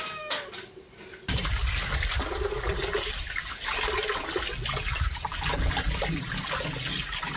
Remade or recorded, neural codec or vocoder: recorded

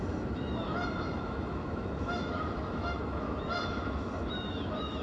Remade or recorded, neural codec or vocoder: remade, autoencoder, DAC-VAE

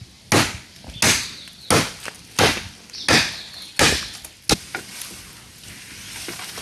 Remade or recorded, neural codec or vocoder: recorded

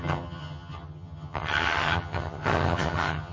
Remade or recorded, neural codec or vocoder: remade, vocoder, HiFi-GAN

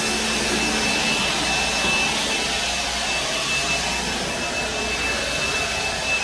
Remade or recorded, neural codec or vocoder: recorded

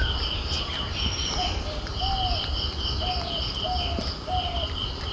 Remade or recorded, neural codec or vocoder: recorded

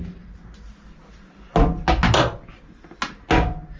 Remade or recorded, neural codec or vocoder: recorded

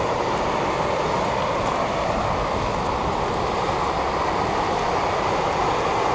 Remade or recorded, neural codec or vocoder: recorded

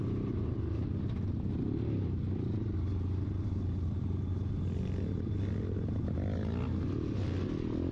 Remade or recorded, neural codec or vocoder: recorded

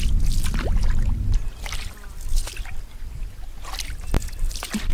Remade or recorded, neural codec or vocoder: recorded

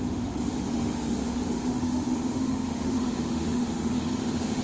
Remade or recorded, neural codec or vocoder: remade, autoencoder, DAC-VAE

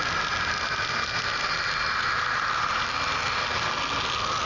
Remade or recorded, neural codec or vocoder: recorded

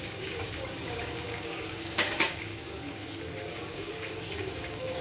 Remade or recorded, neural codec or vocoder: remade, codec, DAC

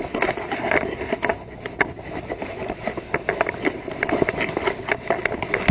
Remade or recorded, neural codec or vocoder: recorded